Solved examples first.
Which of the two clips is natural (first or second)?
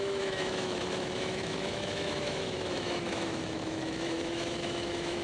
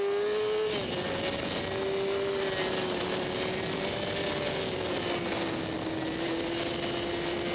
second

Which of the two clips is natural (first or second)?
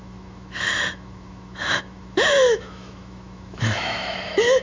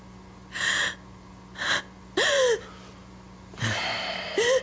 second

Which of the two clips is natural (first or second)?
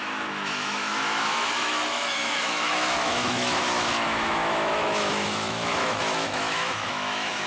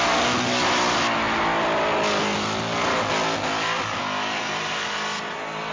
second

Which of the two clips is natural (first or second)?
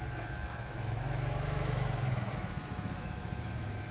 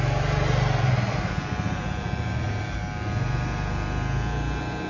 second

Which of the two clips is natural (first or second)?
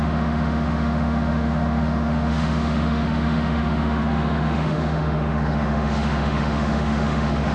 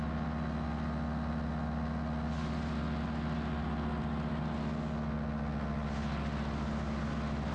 second